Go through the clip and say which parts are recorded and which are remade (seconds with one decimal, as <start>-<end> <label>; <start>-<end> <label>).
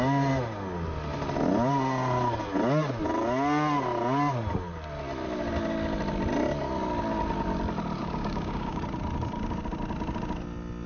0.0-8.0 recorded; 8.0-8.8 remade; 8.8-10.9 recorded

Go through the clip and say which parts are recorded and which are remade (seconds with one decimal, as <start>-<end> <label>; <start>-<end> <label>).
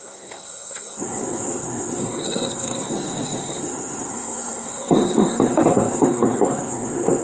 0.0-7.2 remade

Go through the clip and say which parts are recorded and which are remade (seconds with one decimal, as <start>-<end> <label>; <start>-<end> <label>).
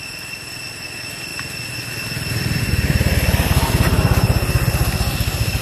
0.0-5.6 recorded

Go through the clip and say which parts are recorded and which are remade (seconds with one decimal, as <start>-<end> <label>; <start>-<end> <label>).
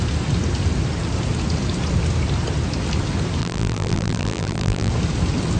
0.0-3.4 recorded; 3.4-4.9 remade; 4.9-5.6 recorded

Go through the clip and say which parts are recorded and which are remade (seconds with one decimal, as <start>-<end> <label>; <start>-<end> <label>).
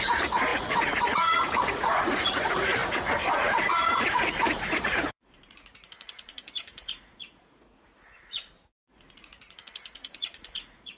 0.0-11.0 remade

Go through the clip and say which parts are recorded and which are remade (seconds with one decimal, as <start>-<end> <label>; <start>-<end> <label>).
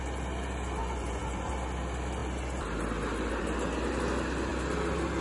0.0-0.8 recorded; 0.8-1.5 remade; 1.5-5.2 recorded